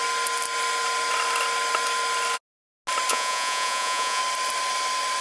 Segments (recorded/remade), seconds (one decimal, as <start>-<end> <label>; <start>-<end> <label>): 0.0-3.1 recorded; 3.1-4.2 remade; 4.2-5.2 recorded